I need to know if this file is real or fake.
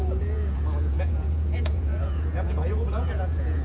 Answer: fake